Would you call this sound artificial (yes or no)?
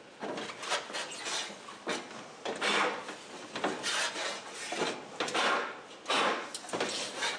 no